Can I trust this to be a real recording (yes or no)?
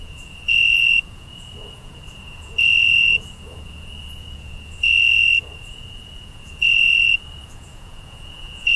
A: no